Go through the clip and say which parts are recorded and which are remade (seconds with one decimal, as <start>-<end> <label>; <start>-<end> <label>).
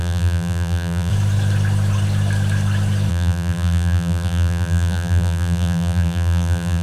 0.0-1.1 remade; 1.1-3.1 recorded; 3.1-6.8 remade